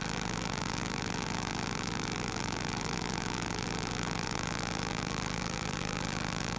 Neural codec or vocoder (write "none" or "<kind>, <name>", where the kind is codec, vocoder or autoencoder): vocoder, BigVGAN v2